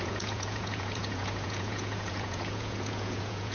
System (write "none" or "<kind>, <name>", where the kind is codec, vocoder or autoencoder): vocoder, Vocos